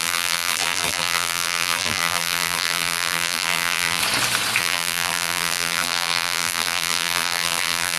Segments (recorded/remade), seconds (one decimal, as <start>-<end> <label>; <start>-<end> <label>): 0.0-4.0 remade; 4.0-4.6 recorded; 4.6-8.0 remade